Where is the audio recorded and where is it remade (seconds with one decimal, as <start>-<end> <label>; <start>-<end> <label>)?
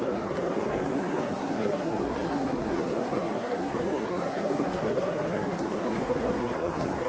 0.0-7.1 remade